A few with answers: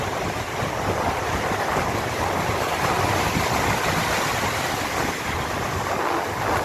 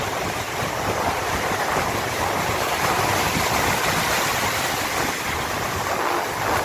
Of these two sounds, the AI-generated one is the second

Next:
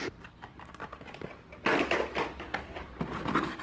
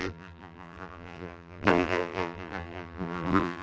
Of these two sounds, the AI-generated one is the second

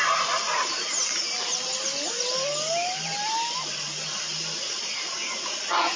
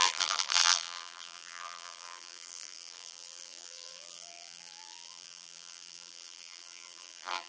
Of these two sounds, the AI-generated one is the second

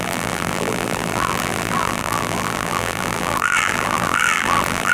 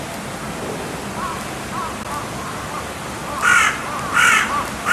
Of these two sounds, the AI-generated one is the first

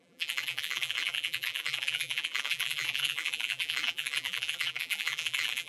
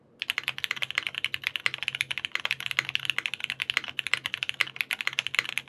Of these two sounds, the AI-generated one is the first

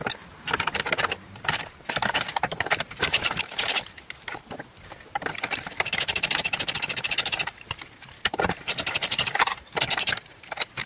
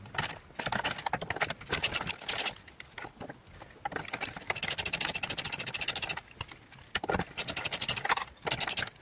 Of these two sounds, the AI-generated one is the first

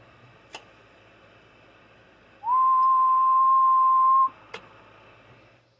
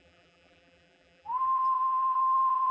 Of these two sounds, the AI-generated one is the second